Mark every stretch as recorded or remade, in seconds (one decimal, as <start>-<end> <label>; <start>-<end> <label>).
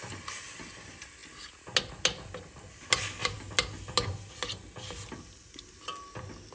0.0-6.5 recorded